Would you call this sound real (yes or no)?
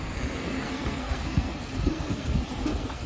no